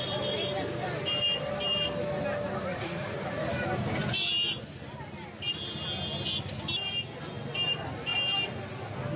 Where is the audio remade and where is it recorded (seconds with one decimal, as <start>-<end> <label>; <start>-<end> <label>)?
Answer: 0.0-2.7 recorded; 2.7-3.3 remade; 3.3-9.2 recorded